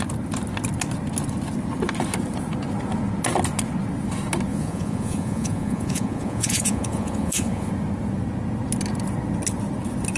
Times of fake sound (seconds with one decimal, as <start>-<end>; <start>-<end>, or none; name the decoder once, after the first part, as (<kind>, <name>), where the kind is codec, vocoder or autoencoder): 4.5-7.7 (vocoder, Vocos)